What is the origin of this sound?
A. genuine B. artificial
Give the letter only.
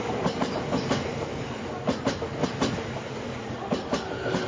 A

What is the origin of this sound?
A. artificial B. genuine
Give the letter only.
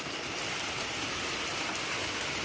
B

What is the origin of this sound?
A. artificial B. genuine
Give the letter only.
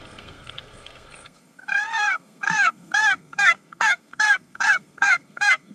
A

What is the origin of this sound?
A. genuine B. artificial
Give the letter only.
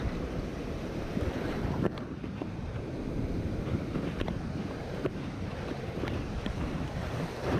B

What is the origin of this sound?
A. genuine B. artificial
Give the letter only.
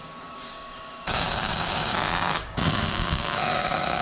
B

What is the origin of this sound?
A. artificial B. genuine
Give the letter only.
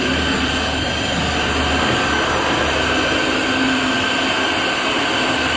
B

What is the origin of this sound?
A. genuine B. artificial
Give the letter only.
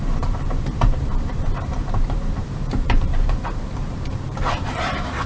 B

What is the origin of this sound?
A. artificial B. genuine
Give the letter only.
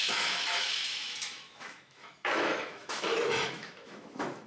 A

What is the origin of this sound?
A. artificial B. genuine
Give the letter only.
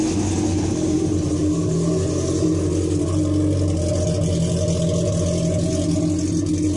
B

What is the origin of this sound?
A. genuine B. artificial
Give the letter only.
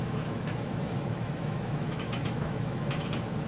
B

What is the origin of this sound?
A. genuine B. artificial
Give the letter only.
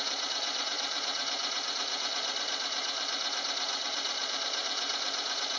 B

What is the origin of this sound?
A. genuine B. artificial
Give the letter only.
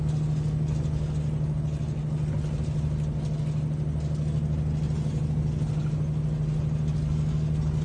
A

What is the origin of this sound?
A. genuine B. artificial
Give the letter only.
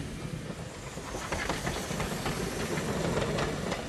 A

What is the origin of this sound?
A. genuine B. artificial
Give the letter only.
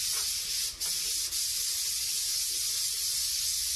A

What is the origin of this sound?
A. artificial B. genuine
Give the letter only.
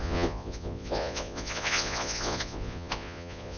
A